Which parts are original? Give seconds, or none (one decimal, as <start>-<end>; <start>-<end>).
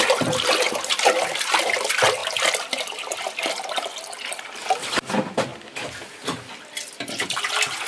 0.0-7.9